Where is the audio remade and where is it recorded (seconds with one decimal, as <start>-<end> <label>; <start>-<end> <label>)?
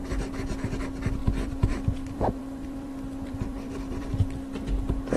0.0-1.2 recorded; 1.2-4.1 remade; 4.1-5.2 recorded